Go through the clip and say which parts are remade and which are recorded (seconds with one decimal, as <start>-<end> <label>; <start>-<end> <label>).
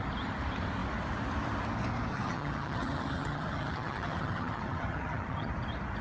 0.0-2.1 recorded; 2.1-5.5 remade; 5.5-6.0 recorded